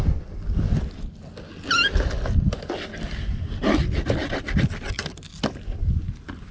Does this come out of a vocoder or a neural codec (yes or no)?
no